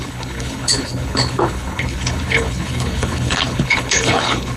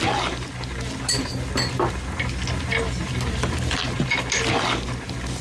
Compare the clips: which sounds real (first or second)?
second